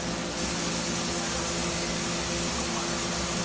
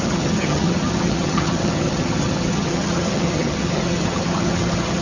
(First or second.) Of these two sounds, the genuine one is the first